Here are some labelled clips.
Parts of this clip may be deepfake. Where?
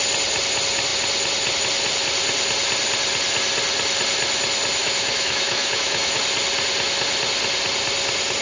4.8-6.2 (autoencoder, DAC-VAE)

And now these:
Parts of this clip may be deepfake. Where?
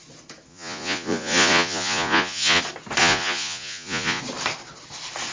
0.5-2.6 (vocoder, Vocos); 3.0-4.2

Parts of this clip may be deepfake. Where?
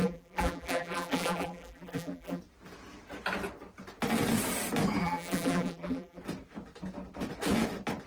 0.0-2.4 (vocoder, BigVGAN v2); 5.0-6.2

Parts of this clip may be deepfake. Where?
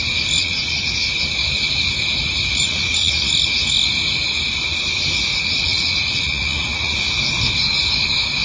0.4-0.9 (vocoder, Vocos); 2.5-3.3; 5.3-7.1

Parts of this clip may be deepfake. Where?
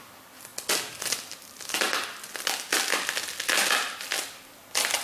none